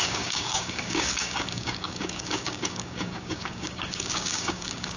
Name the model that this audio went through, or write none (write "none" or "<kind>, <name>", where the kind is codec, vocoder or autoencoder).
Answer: codec, DAC